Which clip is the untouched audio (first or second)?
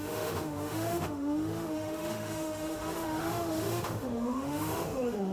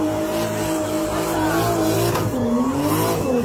second